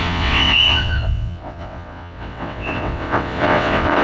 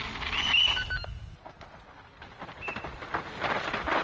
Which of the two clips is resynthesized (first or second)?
first